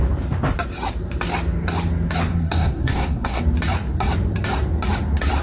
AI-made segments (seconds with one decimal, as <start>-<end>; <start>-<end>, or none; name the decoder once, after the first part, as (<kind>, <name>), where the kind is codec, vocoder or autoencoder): 2.3-3.4 (codec, SNAC)